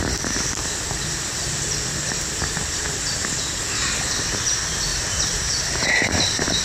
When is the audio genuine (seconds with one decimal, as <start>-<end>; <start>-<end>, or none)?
0.0-4.9